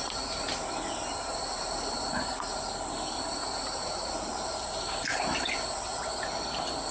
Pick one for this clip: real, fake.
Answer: real